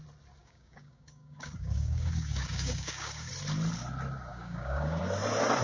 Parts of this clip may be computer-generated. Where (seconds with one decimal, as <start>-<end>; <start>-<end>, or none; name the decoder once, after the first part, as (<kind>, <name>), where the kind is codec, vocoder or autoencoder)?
0.4-3.3 (codec, DAC); 4.3-5.0